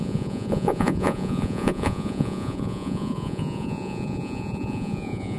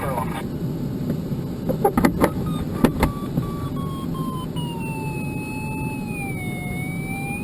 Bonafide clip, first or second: second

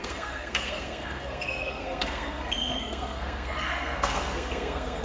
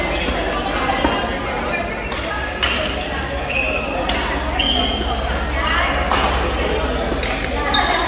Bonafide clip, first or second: second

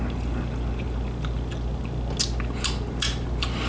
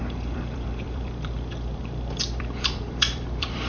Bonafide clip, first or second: first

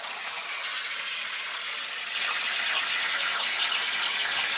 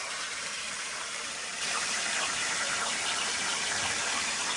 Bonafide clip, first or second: first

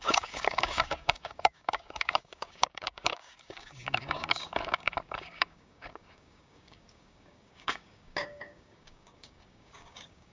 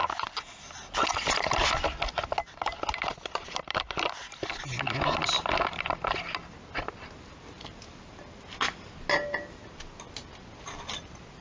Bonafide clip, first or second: second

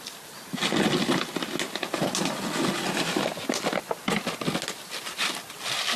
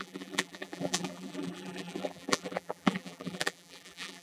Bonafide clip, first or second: first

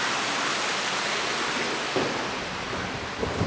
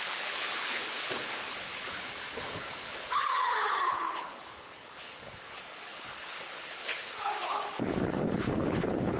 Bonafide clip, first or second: first